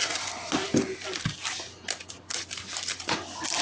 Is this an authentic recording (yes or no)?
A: yes